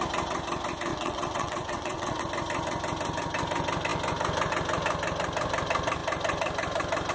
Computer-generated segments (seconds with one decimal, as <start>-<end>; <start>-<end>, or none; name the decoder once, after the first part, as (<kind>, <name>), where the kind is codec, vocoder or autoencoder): 0.9-2.2 (vocoder, WaveNeXt)

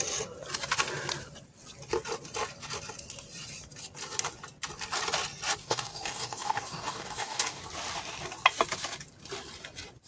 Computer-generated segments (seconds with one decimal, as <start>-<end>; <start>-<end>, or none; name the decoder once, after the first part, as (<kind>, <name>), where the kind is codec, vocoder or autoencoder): 5.6-7.6 (codec, DAC)